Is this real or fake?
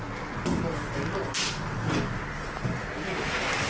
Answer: real